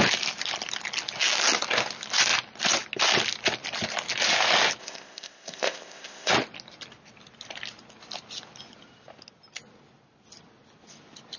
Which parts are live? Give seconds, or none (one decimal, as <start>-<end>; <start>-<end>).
0.0-4.8; 6.3-11.4